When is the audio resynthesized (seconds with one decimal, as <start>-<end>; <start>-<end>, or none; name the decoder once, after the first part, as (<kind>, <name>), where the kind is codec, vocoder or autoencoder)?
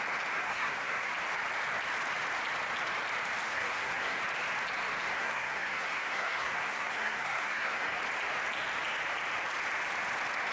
0.4-1.1 (codec, SNAC); 3.5-4.2; 5.1-8.0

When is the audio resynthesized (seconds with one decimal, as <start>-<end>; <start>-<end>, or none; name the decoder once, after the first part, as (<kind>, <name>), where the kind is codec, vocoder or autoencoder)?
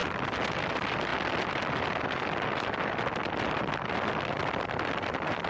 none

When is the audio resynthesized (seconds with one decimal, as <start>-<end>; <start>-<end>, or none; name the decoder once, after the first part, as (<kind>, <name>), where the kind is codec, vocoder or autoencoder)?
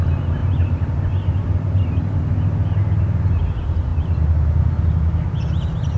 none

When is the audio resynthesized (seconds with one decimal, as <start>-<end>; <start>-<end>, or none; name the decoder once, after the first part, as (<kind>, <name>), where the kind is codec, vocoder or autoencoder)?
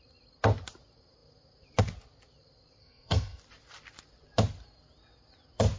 2.8-3.4 (codec, SNAC)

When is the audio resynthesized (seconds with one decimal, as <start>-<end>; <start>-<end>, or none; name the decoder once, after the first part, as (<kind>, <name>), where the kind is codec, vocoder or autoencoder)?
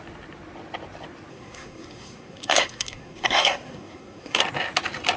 1.3-4.4 (codec, SNAC)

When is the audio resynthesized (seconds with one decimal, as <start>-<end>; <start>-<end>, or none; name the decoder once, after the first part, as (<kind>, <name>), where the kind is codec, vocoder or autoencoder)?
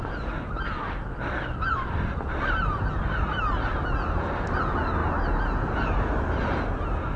none